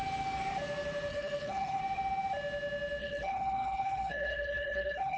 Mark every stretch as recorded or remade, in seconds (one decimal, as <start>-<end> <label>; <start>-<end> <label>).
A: 0.0-1.1 recorded; 1.1-1.8 remade; 1.8-3.0 recorded; 3.0-5.2 remade